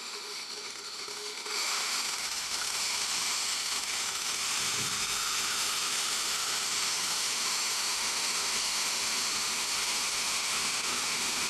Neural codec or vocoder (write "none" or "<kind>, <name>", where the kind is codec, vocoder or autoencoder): autoencoder, DAC-VAE